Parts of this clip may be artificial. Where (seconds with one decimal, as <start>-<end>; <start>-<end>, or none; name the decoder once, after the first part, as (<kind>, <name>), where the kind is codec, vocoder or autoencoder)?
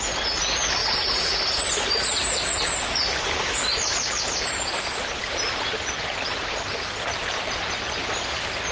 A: none